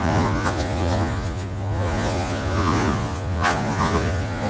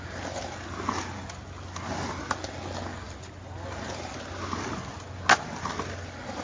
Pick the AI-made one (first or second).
first